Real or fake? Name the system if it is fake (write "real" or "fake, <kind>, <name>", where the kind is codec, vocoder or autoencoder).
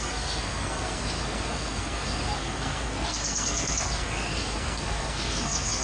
fake, codec, SNAC